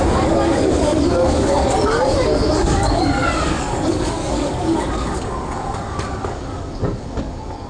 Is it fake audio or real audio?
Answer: fake